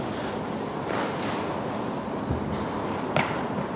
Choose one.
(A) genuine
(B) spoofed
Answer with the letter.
A